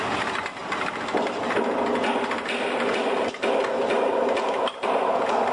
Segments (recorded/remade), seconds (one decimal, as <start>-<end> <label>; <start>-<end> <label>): 0.0-5.5 recorded